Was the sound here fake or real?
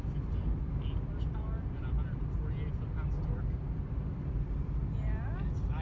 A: real